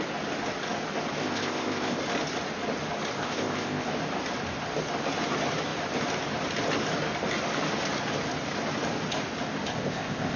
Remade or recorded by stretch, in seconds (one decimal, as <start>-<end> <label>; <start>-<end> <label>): 0.0-1.2 recorded; 1.2-2.0 remade; 2.0-3.2 recorded; 3.2-3.9 remade; 3.9-9.7 recorded; 9.7-10.4 remade